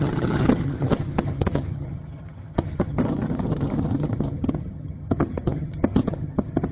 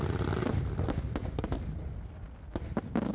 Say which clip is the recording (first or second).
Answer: second